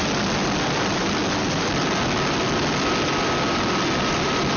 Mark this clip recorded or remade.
recorded